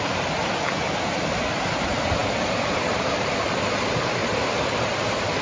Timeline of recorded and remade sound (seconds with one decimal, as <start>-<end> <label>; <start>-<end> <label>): 0.0-4.2 remade; 4.2-5.4 recorded